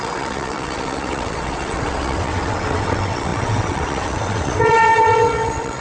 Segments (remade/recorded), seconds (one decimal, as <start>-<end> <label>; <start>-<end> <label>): 0.0-5.8 remade